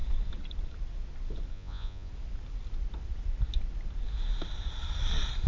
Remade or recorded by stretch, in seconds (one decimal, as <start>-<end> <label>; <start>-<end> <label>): 0.0-1.5 recorded; 1.5-2.1 remade; 2.1-5.5 recorded